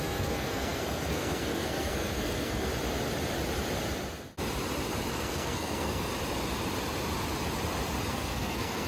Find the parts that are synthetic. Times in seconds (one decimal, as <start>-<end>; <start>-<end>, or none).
0.0-2.7; 5.1-6.1; 8.1-8.9